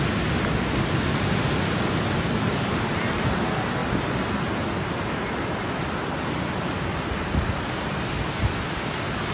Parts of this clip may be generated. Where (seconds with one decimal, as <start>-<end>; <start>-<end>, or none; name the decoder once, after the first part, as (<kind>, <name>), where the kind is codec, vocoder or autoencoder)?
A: none